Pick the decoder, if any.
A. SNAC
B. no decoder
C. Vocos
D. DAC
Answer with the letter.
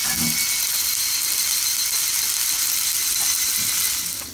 B